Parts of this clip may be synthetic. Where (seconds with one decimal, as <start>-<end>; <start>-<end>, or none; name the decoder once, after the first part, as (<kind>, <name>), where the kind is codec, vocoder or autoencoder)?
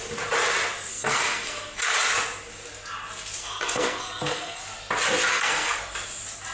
0.9-1.8 (codec, SNAC); 3.4-4.6; 5.3-5.8